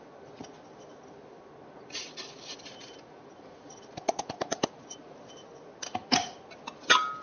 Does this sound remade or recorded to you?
recorded